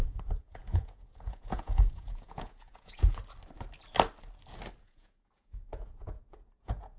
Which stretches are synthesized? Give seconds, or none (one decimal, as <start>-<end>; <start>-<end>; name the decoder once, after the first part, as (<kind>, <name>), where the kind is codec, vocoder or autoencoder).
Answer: 0.0-3.2 (vocoder, Vocos); 4.8-7.0